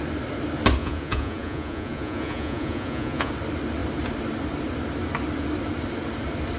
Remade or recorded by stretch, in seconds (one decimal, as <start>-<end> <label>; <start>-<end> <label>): 0.0-0.8 recorded; 0.8-3.3 remade; 3.3-6.6 recorded